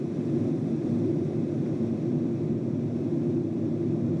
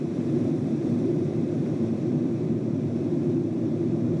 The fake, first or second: second